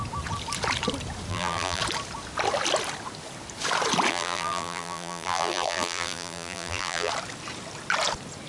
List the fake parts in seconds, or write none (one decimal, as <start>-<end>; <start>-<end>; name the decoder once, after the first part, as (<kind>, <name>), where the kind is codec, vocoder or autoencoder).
1.3-1.8 (vocoder, BigVGAN v2); 4.1-7.1